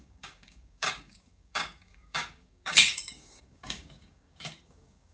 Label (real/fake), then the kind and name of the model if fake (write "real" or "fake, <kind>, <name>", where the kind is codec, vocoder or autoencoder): fake, codec, DAC